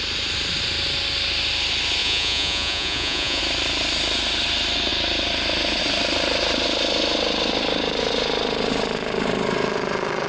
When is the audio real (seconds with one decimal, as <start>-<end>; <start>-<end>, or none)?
0.0-2.0; 3.4-10.3